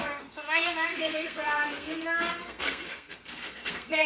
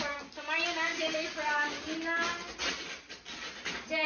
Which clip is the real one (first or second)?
second